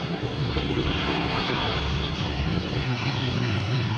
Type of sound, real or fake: fake